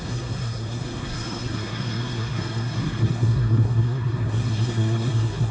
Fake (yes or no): yes